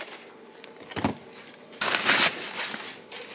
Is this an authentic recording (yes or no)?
yes